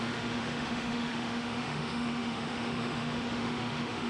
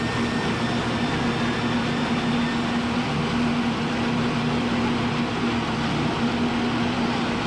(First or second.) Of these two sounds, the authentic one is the second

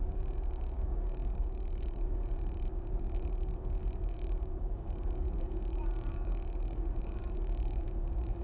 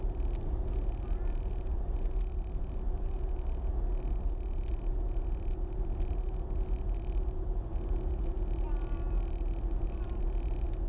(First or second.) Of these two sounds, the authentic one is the second